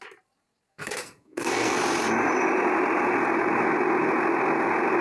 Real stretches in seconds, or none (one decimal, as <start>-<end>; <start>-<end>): 0.0-0.7; 1.8-5.0